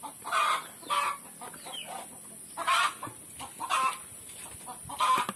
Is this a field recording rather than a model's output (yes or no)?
yes